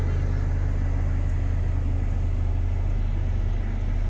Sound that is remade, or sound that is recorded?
recorded